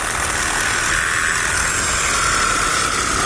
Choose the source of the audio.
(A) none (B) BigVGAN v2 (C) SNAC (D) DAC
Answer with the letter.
A